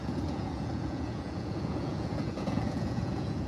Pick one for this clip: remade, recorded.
remade